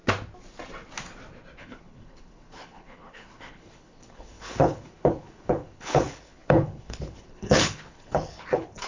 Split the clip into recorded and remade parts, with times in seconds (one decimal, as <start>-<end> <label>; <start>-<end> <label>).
0.0-1.6 recorded; 1.6-8.9 remade